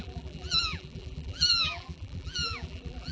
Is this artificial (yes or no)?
yes